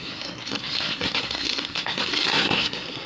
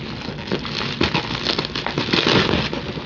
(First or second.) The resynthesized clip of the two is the first